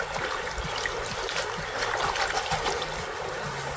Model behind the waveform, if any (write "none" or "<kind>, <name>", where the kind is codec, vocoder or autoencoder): none